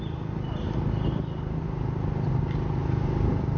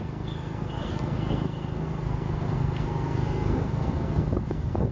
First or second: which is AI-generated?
second